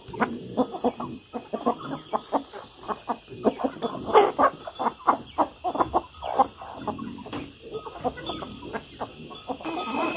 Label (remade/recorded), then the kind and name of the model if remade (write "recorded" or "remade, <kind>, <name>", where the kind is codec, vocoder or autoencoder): recorded